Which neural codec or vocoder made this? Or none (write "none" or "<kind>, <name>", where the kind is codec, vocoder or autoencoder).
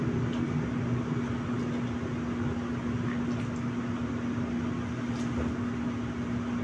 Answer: none